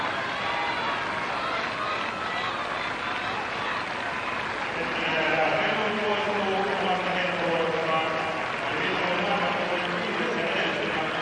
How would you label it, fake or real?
real